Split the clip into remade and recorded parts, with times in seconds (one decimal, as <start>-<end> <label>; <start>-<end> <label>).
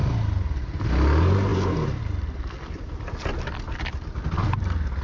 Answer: 0.0-0.9 remade; 0.9-5.0 recorded